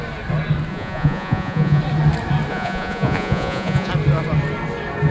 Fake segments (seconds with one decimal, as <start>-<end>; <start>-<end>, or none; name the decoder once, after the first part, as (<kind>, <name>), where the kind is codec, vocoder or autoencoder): 0.7-1.8 (vocoder, Vocos); 2.5-3.9